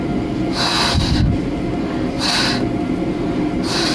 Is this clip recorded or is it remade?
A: remade